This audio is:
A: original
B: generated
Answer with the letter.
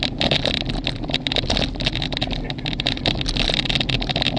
A